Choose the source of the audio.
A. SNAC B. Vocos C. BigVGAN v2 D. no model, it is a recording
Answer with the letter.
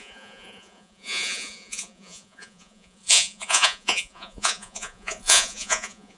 B